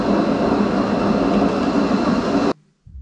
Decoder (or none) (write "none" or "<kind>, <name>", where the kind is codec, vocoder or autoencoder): none